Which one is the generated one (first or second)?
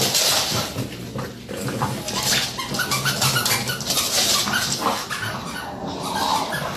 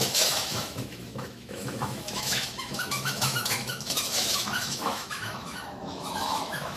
second